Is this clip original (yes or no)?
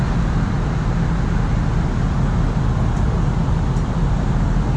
no